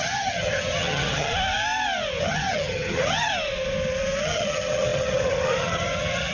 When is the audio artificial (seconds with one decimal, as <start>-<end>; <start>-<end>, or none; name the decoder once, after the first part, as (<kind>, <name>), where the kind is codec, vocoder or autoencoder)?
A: 0.0-1.3 (vocoder, HiFi-GAN); 2.2-3.3; 4.2-6.3